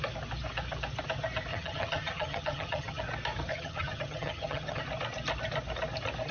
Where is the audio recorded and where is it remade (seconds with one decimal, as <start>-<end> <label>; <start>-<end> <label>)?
0.0-1.5 recorded; 1.5-3.0 remade; 3.0-3.5 recorded; 3.5-4.8 remade; 4.8-6.3 recorded